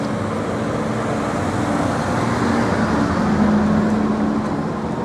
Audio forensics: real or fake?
real